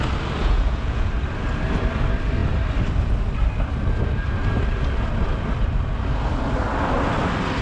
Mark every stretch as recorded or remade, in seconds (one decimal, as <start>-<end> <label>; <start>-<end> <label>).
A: 0.0-0.4 recorded; 0.4-1.1 remade; 1.1-7.6 recorded